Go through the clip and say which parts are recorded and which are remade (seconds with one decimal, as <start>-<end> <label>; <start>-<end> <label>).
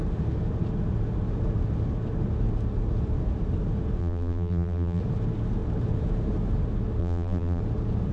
0.0-4.0 recorded; 4.0-5.0 remade; 5.0-7.0 recorded; 7.0-7.6 remade; 7.6-8.1 recorded